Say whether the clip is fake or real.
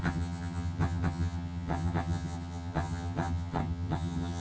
fake